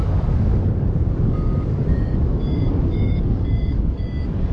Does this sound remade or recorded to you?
remade